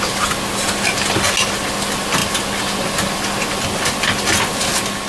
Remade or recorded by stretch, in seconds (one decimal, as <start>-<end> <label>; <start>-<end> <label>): 0.0-5.1 recorded